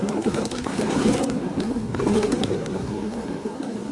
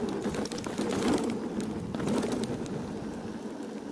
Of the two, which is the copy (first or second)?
first